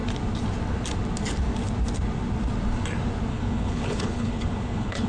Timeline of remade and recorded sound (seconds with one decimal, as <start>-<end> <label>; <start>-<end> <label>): 0.0-3.3 recorded; 3.3-5.1 remade